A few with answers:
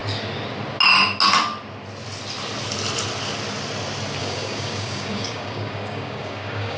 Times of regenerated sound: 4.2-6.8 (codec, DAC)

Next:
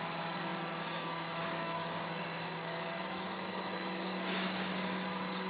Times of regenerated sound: 0.0-5.5 (codec, DAC)

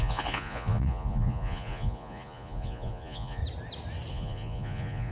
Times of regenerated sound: 0.0-3.4 (vocoder, Vocos); 4.1-5.1

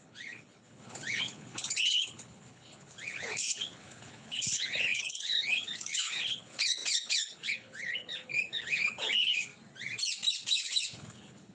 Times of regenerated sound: 0.0-9.5 (codec, HILCodec); 10.3-11.5